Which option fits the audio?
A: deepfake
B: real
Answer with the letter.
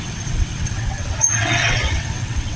A